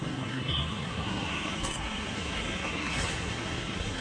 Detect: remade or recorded remade